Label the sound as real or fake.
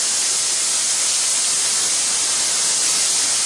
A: real